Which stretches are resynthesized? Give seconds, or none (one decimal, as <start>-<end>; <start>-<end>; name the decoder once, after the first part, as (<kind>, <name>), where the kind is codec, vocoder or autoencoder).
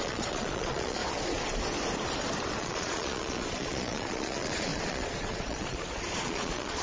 0.0-1.0 (vocoder, Vocos); 2.6-6.8